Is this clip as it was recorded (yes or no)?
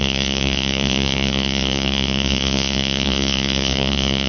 no